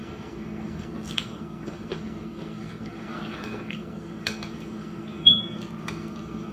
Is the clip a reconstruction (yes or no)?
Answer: yes